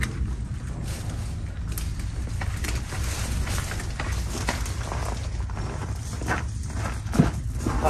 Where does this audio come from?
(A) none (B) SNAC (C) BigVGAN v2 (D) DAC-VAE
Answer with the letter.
A